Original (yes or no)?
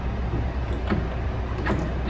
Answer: yes